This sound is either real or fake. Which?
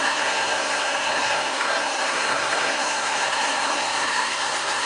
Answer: fake